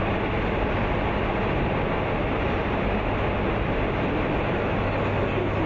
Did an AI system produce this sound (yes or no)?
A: no